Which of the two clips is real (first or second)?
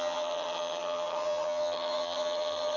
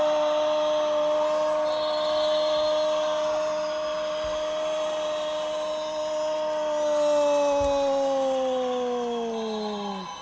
second